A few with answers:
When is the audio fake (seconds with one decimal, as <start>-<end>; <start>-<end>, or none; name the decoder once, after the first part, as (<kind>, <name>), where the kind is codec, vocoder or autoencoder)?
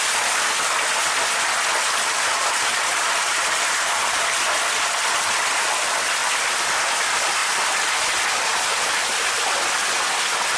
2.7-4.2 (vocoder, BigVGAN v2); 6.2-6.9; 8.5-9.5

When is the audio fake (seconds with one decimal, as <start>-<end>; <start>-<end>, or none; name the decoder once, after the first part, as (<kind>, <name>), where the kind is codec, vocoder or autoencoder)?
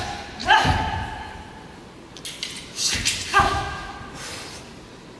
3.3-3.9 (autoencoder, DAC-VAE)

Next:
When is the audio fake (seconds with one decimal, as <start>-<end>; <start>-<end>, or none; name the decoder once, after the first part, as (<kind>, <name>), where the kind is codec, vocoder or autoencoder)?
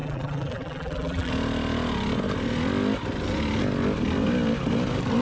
0.0-1.3 (vocoder, BigVGAN v2)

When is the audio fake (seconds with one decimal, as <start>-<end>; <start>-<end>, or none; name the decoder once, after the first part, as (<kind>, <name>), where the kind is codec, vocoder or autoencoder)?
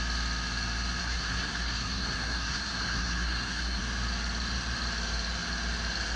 1.0-3.8 (codec, SNAC)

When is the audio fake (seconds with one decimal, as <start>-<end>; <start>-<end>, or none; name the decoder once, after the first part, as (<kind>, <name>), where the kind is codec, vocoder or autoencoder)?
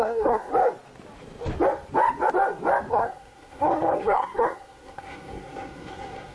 0.0-0.5 (codec, SNAC); 2.9-6.3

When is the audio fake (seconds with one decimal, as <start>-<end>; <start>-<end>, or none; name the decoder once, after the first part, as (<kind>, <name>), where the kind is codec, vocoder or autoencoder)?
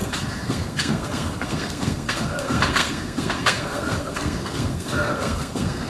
0.0-5.9 (codec, SNAC)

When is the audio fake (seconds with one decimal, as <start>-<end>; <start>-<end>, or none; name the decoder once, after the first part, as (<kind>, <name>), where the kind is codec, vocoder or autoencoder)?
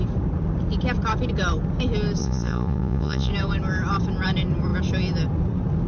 2.2-3.3 (vocoder, Vocos)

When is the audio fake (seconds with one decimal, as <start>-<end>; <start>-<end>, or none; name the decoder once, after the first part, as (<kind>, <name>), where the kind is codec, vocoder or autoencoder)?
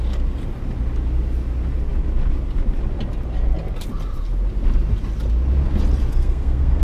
6.1-6.8 (codec, SNAC)